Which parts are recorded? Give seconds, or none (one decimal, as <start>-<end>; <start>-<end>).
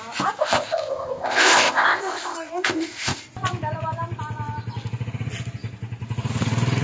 0.0-0.4; 3.2-6.8